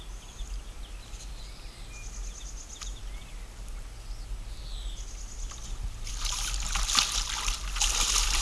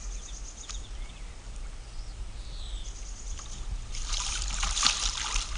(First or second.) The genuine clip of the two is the first